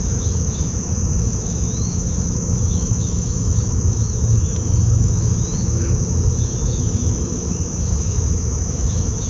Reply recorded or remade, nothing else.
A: remade